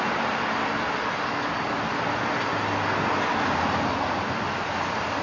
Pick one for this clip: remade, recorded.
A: recorded